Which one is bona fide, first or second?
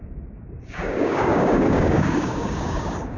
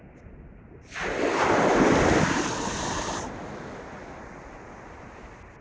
second